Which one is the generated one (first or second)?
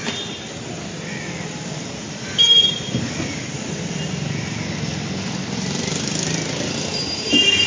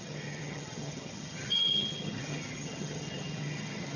second